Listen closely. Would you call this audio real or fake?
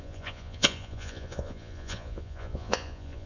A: fake